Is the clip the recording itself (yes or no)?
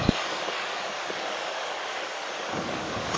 no